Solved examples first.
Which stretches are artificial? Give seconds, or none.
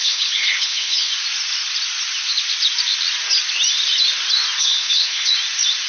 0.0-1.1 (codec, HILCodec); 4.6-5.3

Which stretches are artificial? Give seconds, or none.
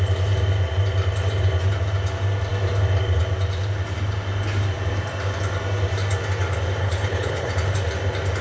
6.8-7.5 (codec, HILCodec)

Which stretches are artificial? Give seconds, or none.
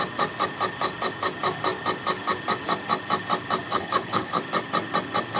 3.7-4.4 (codec, HILCodec)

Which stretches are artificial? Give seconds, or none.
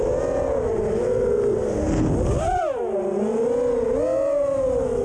none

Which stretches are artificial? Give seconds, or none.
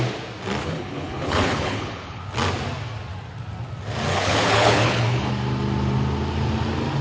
0.6-2.2 (codec, HILCodec); 4.1-5.3